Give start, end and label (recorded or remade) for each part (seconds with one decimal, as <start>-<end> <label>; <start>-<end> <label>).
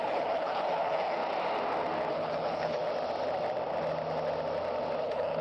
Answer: 0.0-1.2 remade; 1.2-2.1 recorded; 2.1-2.8 remade; 2.8-5.0 recorded; 5.0-5.4 remade